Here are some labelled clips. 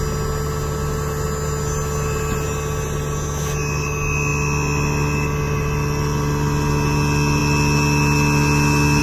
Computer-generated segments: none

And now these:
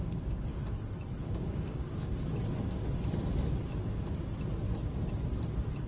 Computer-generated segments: 0.0-0.5 (codec, DAC); 1.2-2.1

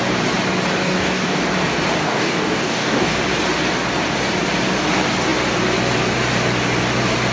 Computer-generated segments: 0.8-1.4 (codec, DAC); 2.0-3.2

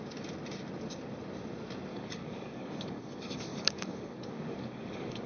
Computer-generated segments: 1.9-5.3 (codec, DAC)

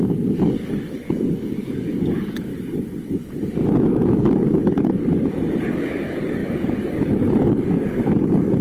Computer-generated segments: 0.0-2.5 (codec, DAC); 3.9-5.0; 5.6-8.6

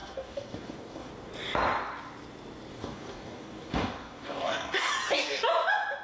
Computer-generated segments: 0.0-1.1 (codec, DAC); 2.7-4.9

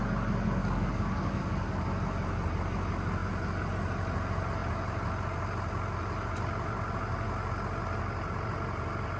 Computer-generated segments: 0.6-1.9 (codec, DAC)

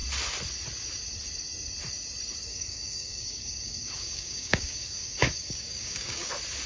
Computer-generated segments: 2.5-6.3 (codec, DAC)